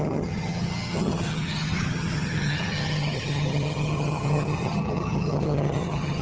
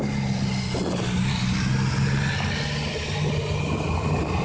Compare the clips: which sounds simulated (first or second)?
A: first